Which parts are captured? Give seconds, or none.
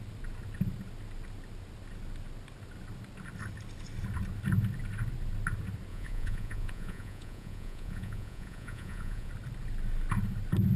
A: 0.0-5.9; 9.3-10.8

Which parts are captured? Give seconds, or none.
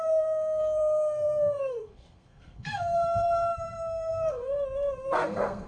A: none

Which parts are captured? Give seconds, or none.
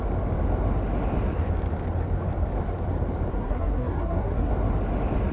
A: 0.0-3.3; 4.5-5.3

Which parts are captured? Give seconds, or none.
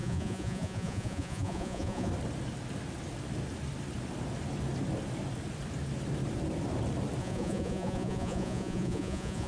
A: 2.1-7.2